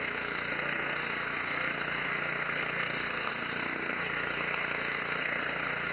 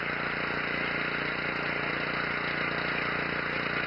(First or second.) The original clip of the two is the second